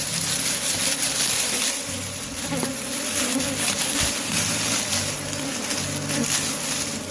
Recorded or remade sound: recorded